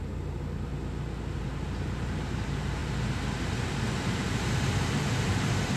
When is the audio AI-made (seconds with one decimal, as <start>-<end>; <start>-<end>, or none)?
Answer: 0.0-0.7; 1.4-2.8; 4.3-5.8